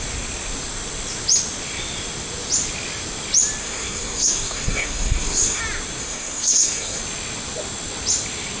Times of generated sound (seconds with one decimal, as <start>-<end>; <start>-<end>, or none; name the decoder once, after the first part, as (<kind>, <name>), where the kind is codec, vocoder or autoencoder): 3.6-5.6 (codec, SNAC); 6.0-7.0